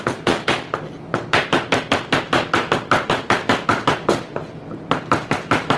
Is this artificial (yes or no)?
no